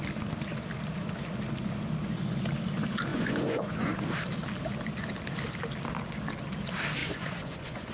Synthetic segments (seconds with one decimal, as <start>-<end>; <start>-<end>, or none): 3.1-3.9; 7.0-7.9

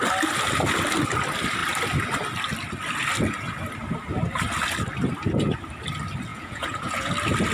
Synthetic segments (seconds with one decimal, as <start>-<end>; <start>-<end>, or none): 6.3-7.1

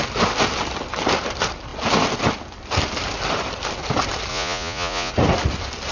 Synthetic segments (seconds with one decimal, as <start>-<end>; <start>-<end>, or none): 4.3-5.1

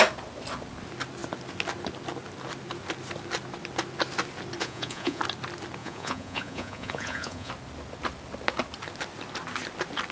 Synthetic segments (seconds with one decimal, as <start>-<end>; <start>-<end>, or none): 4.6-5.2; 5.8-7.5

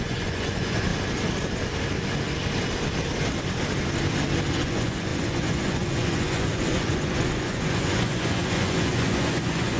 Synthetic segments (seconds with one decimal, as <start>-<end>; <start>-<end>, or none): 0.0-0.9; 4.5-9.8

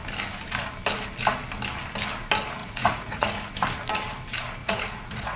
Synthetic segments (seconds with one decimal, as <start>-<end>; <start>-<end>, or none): 2.6-3.4; 4.6-5.4

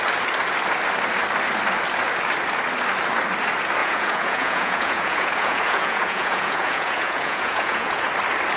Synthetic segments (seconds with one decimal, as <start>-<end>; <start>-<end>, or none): 3.8-8.1

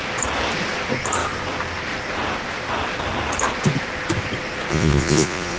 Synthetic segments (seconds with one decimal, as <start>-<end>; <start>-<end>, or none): 4.7-5.6